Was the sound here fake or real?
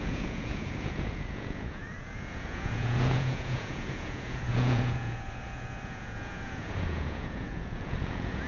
fake